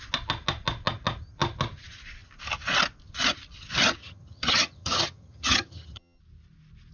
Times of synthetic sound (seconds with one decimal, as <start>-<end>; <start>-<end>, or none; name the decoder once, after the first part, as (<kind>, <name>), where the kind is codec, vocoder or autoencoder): 4.0-6.2 (vocoder, HiFi-GAN)